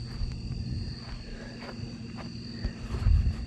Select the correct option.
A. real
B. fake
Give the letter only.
A